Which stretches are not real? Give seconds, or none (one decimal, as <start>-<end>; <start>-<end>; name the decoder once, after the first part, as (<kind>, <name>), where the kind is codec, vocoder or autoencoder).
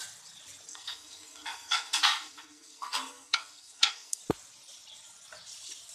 0.7-4.2 (codec, SNAC)